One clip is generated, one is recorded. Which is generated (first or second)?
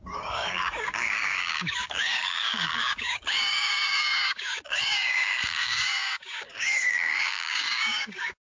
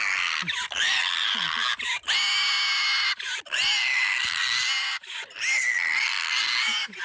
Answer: first